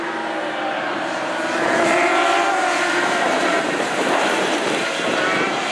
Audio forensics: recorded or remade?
remade